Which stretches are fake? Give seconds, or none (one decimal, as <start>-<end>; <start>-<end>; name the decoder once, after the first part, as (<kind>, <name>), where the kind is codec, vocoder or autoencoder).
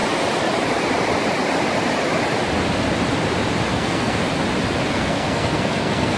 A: 3.7-4.2 (codec, SNAC); 4.9-6.2